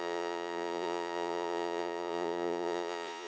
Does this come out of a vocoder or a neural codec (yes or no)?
yes